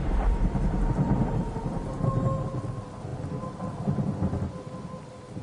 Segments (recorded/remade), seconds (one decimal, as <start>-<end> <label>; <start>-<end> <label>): 0.0-2.1 remade; 2.1-5.4 recorded